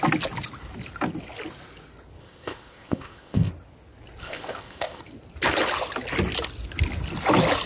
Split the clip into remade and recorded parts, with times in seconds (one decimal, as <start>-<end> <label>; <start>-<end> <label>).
0.0-2.2 recorded; 2.2-3.5 remade; 3.5-4.2 recorded; 4.2-5.0 remade; 5.0-7.7 recorded